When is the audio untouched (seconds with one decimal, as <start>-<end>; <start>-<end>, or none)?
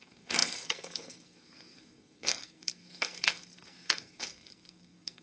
none